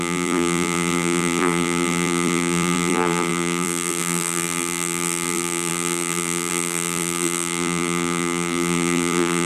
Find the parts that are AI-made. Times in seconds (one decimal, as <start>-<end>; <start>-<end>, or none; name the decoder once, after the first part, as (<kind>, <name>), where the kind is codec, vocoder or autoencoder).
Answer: 0.0-9.5 (vocoder, BigVGAN v2)